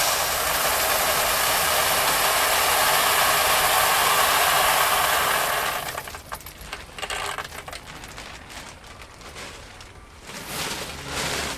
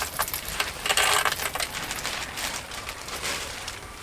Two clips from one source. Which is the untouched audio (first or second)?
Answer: first